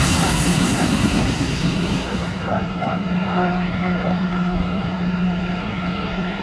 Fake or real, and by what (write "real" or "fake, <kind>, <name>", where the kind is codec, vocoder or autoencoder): fake, codec, SNAC